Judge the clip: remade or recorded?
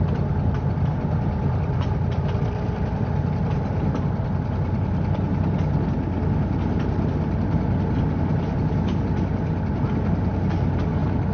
recorded